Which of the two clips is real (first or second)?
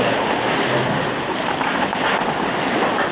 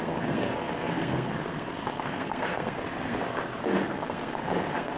first